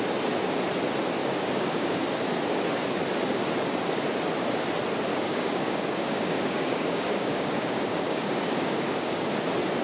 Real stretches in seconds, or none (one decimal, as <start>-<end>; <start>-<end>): 0.0-1.2; 2.0-5.1; 9.3-9.8